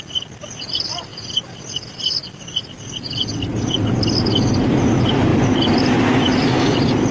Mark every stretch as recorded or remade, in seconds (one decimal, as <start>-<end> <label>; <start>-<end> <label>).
0.0-7.1 recorded